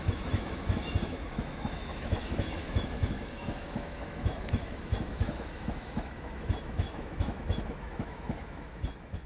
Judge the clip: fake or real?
fake